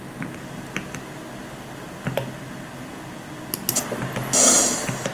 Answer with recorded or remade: recorded